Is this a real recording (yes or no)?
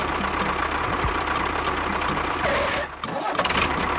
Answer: yes